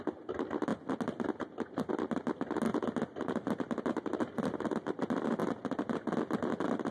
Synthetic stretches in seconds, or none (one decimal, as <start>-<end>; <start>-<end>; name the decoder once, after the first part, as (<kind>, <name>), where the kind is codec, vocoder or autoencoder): none